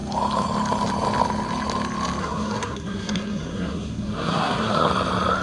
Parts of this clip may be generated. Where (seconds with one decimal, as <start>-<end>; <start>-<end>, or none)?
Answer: 2.2-4.9